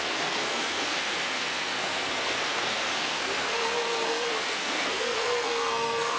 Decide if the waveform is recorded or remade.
remade